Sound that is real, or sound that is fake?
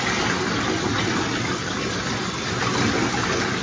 real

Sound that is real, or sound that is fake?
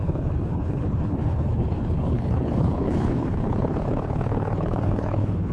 fake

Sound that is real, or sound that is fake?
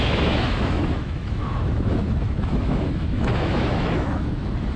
fake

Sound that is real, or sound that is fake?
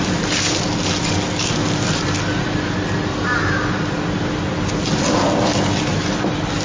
real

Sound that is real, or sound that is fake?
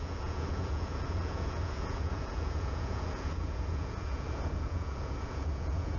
fake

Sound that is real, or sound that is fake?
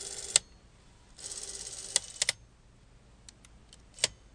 real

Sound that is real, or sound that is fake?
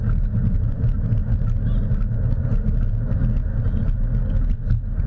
real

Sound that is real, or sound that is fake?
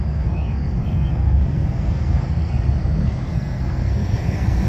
fake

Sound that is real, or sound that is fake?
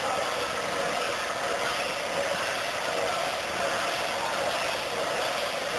real